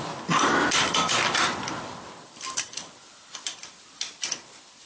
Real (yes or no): yes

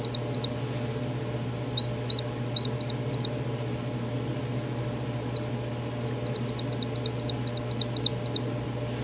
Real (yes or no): yes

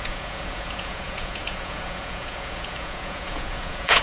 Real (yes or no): no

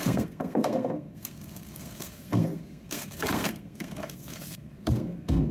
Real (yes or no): no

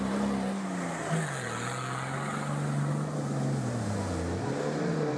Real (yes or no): yes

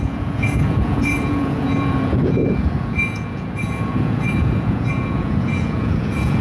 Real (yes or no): no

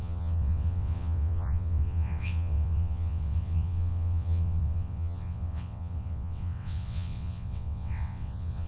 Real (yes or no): no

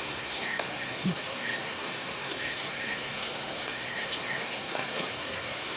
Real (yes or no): no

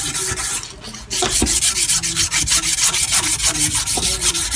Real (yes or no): yes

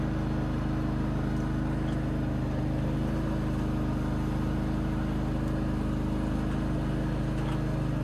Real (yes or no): yes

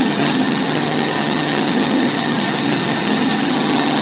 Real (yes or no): no